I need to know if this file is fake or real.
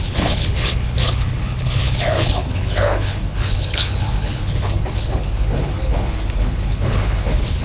fake